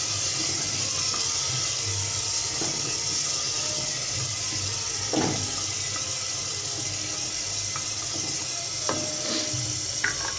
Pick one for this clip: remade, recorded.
recorded